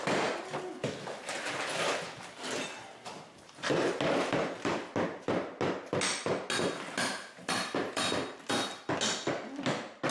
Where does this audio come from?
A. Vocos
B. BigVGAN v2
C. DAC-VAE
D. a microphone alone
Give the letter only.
D